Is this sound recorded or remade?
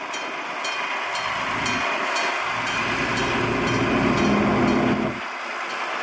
recorded